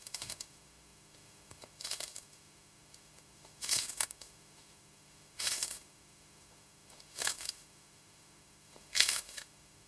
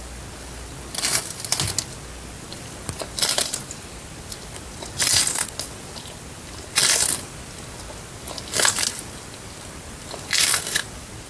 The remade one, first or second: first